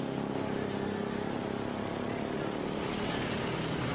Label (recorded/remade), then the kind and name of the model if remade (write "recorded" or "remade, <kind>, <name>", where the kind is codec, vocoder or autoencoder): recorded